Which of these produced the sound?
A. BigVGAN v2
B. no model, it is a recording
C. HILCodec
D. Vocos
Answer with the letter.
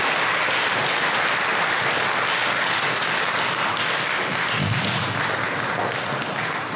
B